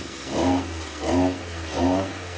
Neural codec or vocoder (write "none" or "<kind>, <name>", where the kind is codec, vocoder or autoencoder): codec, SNAC